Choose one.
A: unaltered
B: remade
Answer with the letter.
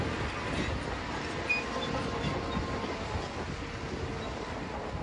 A